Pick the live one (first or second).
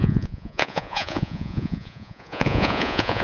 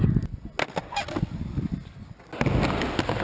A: second